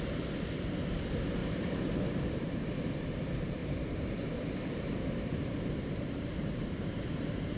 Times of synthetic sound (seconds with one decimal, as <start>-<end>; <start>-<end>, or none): 1.4-3.0; 3.6-7.6

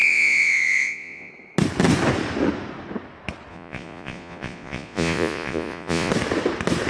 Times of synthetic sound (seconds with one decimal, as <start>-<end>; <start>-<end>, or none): 0.0-1.3; 3.5-6.1

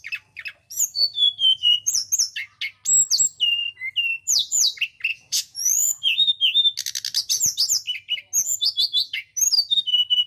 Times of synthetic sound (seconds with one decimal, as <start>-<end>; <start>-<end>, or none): 0.7-2.0; 5.1-6.2

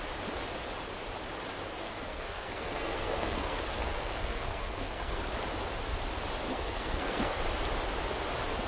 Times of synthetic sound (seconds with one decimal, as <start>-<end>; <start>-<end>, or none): 1.8-5.2; 6.5-7.4

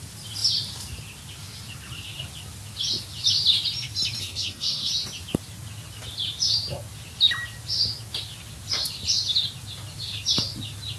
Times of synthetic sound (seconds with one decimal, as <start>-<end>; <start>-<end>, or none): 4.2-4.9